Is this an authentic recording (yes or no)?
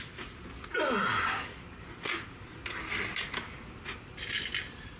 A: yes